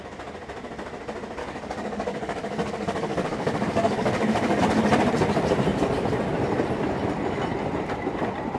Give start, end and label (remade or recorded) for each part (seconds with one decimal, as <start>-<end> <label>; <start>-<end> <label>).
0.0-1.4 recorded; 1.4-4.6 remade; 4.6-8.6 recorded